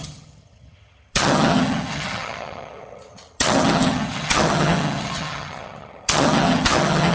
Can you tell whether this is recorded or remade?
remade